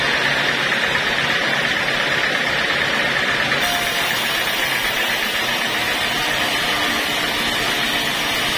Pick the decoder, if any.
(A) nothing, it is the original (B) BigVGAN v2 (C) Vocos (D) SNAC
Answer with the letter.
A